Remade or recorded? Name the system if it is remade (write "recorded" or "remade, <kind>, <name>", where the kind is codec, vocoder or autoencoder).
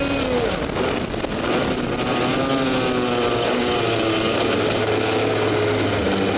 recorded